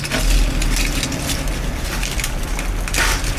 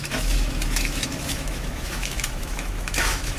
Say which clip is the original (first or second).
first